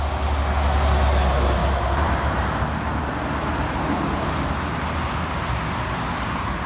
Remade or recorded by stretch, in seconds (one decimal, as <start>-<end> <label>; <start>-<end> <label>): 0.0-1.6 recorded; 1.6-2.7 remade; 2.7-6.7 recorded